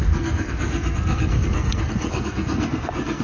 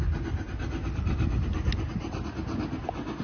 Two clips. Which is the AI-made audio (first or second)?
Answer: first